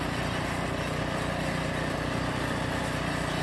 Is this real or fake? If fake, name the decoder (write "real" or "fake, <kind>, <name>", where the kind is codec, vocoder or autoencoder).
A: fake, vocoder, BigVGAN v2